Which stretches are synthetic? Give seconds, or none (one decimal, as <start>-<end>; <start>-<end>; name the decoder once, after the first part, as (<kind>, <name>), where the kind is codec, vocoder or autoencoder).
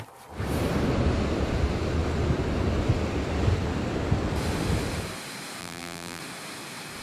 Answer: 5.6-6.2 (vocoder, BigVGAN v2)